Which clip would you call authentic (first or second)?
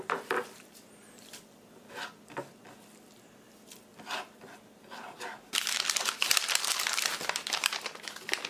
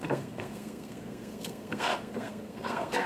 first